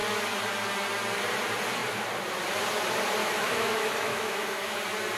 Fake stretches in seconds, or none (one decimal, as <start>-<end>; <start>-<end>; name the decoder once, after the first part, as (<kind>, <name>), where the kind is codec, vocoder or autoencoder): 3.2-4.8 (autoencoder, DAC-VAE)